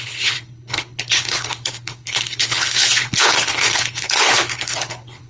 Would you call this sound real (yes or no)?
no